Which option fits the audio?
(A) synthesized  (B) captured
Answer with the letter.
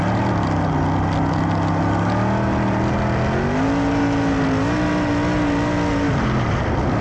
B